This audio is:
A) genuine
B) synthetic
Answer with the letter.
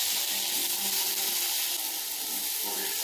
A